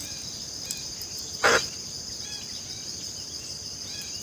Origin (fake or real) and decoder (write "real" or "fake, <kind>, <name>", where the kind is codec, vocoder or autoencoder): real